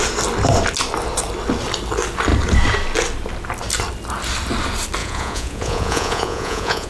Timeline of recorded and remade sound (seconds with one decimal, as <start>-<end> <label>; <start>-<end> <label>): 0.0-5.0 recorded; 5.0-6.9 remade